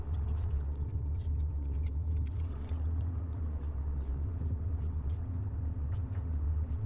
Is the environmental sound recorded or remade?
remade